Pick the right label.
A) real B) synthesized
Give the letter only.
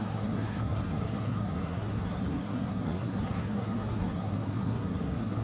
B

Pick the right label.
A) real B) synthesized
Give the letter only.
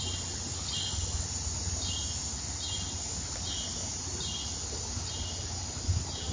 A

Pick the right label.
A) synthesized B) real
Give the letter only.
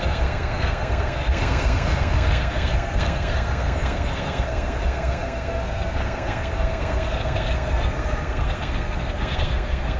A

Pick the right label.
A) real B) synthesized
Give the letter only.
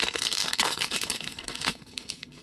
B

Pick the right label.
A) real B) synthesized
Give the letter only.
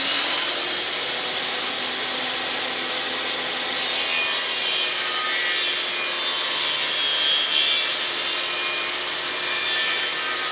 A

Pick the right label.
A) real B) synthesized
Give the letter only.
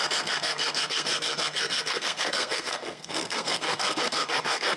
B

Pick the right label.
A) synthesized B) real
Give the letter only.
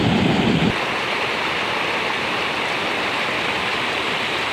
B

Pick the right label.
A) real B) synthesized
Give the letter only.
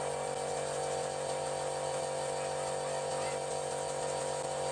A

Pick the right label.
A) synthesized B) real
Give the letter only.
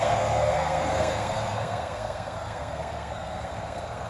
A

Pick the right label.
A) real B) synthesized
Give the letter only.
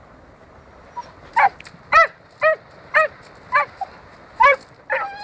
A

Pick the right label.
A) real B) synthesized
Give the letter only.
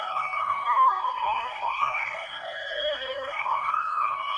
B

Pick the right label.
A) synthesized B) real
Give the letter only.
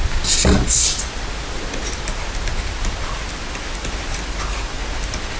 B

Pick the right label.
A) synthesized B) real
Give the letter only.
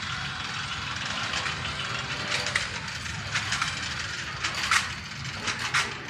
B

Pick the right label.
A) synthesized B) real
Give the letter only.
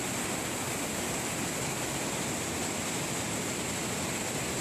B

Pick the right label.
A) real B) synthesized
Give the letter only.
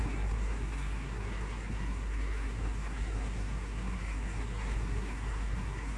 B